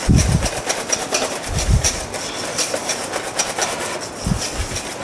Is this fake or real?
real